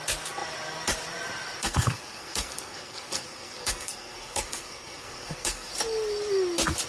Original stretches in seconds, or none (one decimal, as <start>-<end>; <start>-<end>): 0.0-1.6; 5.7-6.9